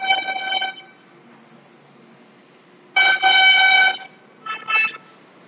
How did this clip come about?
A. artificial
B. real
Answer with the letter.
B